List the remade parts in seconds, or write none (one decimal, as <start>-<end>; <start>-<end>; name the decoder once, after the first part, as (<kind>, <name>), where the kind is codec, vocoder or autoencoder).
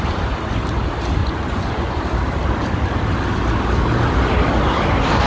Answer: 1.2-2.0 (vocoder, Vocos)